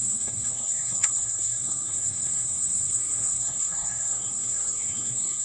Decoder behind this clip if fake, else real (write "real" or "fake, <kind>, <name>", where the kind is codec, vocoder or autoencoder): fake, codec, SNAC